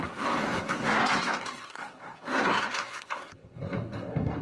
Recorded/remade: remade